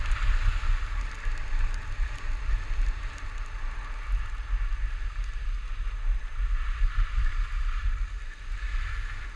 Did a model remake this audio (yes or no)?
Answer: no